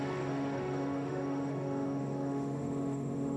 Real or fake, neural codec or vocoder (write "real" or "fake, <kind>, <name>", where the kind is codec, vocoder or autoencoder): fake, autoencoder, DAC-VAE